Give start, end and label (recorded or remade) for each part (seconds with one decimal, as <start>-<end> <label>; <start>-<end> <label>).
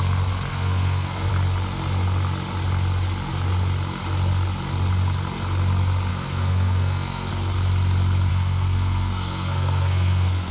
0.0-0.5 recorded; 0.5-1.3 remade; 1.3-6.1 recorded; 6.1-7.3 remade; 7.3-8.3 recorded; 8.3-10.5 remade